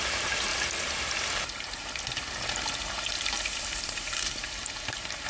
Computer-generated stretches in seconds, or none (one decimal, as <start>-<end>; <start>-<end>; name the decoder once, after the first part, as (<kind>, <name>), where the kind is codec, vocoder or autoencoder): 0.0-0.5 (vocoder, BigVGAN v2); 3.6-5.3